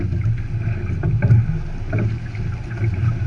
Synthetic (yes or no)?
no